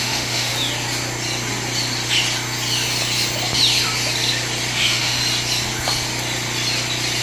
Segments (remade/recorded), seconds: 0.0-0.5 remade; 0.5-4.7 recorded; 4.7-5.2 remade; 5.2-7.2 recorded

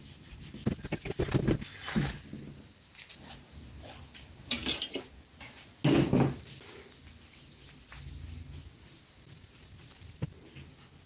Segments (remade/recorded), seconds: 0.0-11.1 recorded

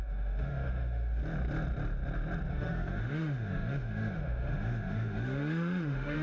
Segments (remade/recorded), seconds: 0.0-1.2 remade; 1.2-2.5 recorded; 2.5-6.2 remade

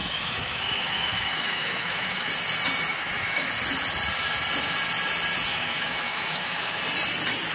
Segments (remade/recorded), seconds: 0.0-2.3 remade; 2.3-2.9 recorded; 2.9-3.5 remade; 3.5-5.5 recorded; 5.5-6.8 remade; 6.8-7.5 recorded

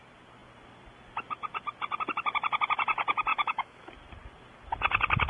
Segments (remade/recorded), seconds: 0.0-3.3 recorded; 3.3-3.9 remade; 3.9-5.3 recorded

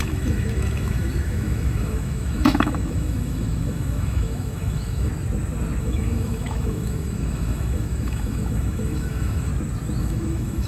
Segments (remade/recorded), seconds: 0.0-5.1 remade; 5.1-5.8 recorded; 5.8-9.5 remade; 9.5-10.0 recorded; 10.0-10.7 remade